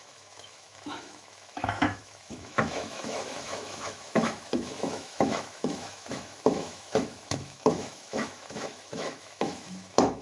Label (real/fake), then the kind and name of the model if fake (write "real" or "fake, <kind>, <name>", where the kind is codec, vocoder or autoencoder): fake, autoencoder, DAC-VAE